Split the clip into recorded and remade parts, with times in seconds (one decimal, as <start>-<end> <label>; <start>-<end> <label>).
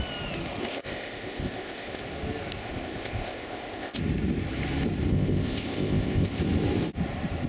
0.0-0.6 recorded; 0.6-2.0 remade; 2.0-2.6 recorded; 2.6-4.0 remade; 4.0-5.1 recorded; 5.1-6.4 remade; 6.4-7.5 recorded